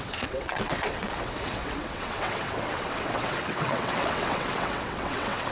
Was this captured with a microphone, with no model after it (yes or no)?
no